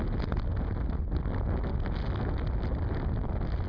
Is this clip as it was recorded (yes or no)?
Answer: yes